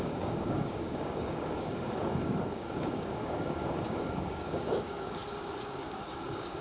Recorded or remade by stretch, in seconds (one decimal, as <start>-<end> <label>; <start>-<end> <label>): 0.0-6.6 remade